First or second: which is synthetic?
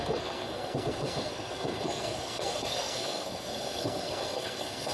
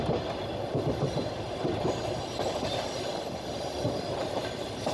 first